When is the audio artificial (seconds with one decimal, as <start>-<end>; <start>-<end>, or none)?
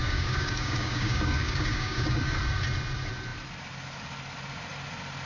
0.0-2.4